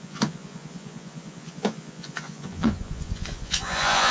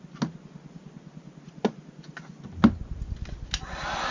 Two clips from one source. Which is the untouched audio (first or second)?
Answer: second